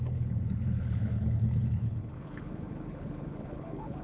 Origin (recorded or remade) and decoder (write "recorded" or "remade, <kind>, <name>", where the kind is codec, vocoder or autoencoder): remade, codec, HILCodec